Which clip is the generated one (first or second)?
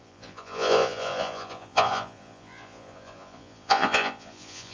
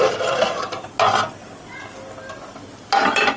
first